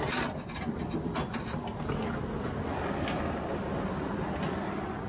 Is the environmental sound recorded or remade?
recorded